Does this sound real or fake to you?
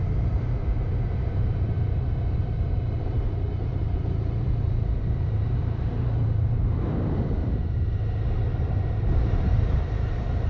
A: fake